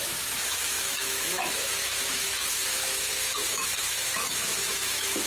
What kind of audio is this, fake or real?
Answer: fake